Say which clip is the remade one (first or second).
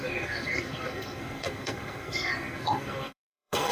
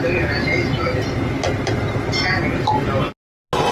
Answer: first